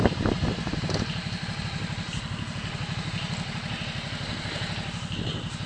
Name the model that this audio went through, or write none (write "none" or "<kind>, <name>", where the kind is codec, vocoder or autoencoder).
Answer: none